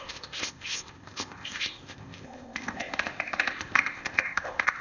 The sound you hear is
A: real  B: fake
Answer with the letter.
B